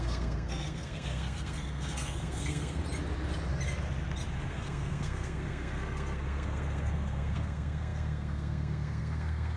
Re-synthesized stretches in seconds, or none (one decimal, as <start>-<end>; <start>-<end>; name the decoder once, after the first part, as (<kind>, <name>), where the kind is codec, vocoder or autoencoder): 0.0-2.8 (codec, SNAC); 4.5-9.6